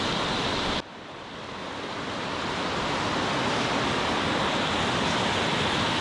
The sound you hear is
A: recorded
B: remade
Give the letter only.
A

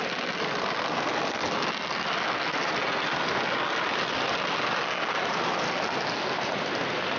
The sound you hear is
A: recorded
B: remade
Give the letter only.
A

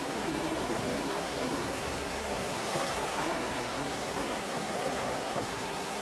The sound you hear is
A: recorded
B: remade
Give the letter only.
B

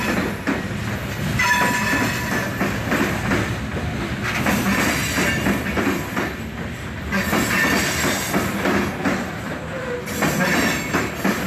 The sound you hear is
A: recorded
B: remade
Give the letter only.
A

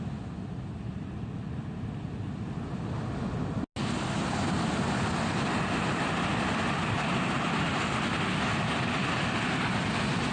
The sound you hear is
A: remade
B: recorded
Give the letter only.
B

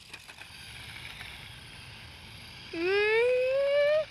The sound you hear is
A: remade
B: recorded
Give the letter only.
B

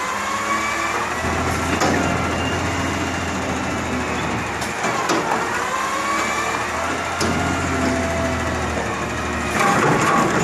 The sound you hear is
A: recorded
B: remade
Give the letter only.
A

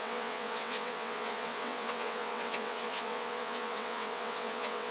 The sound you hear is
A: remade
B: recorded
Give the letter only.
A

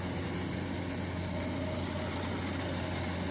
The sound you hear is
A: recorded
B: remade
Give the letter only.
A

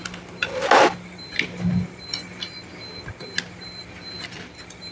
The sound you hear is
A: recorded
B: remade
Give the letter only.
A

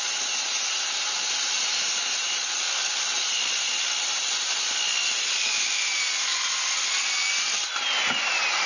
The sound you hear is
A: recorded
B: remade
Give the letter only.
A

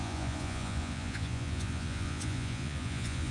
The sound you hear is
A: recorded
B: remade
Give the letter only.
B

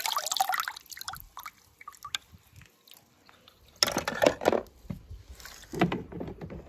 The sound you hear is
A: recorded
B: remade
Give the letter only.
A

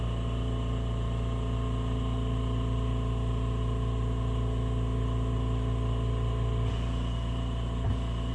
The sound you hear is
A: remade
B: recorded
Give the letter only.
B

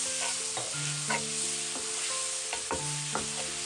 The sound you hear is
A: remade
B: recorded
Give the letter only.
B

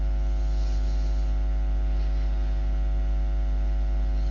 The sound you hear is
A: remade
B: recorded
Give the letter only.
B